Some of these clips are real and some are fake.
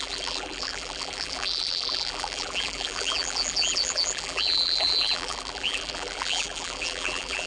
fake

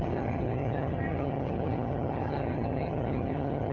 fake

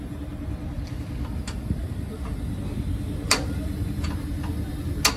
real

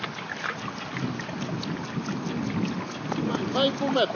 real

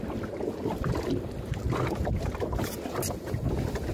real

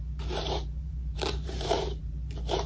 fake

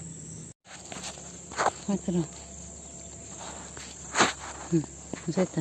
real